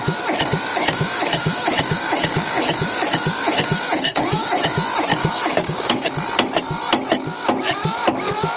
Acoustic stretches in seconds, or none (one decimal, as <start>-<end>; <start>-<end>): 0.0-0.7; 4.5-5.1; 6.1-8.6